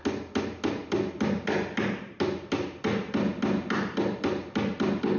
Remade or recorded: recorded